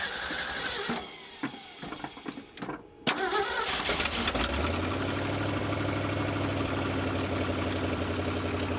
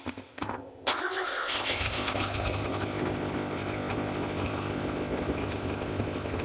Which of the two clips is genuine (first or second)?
first